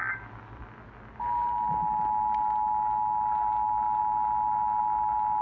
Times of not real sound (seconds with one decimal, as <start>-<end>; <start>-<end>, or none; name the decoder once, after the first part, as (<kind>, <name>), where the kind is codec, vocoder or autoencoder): none